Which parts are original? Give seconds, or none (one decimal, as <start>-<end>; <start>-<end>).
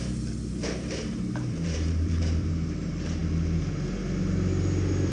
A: 0.0-0.6; 2.5-5.1